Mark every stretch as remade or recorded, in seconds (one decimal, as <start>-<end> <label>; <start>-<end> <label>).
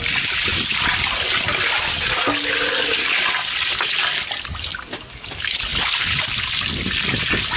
0.0-5.7 recorded; 5.7-6.2 remade; 6.2-7.6 recorded